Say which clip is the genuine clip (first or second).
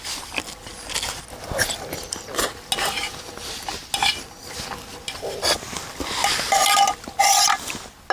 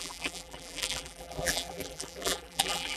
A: first